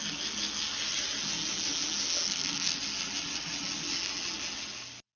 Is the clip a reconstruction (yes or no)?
no